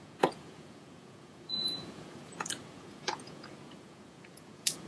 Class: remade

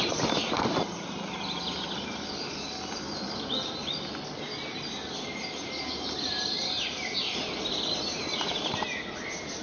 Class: recorded